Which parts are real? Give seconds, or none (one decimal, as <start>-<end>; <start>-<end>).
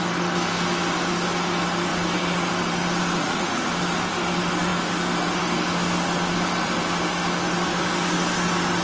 0.0-3.2; 3.8-8.8